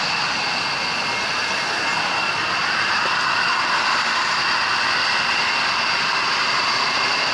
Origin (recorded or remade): recorded